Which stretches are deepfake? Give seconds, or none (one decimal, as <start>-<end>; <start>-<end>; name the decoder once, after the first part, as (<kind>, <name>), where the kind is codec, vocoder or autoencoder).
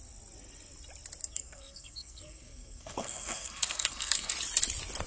1.2-4.3 (codec, SNAC)